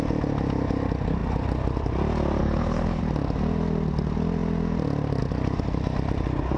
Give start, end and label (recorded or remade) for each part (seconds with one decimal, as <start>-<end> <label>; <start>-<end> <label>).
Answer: 0.0-2.4 recorded; 2.4-3.0 remade; 3.0-6.6 recorded